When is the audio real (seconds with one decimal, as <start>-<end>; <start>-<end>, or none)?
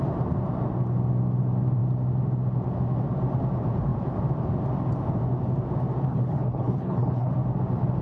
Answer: 0.0-6.1; 7.3-8.0